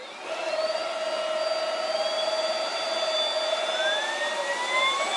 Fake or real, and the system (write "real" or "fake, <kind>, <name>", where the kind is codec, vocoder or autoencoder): real